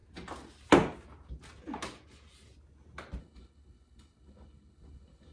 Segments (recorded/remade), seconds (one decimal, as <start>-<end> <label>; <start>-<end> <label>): 0.0-3.2 recorded; 3.2-5.3 remade